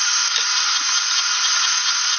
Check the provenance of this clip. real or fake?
real